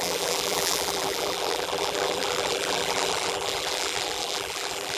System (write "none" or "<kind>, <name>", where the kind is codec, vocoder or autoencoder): vocoder, BigVGAN v2